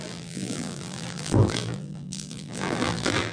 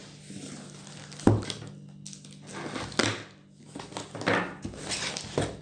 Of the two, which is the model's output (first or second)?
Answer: first